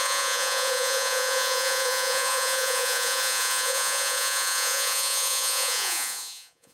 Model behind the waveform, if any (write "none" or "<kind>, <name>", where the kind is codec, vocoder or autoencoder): vocoder, Vocos